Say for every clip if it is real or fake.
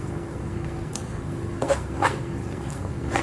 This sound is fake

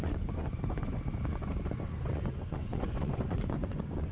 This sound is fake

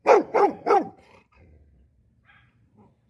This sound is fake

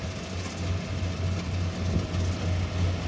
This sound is real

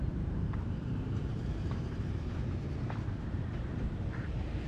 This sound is fake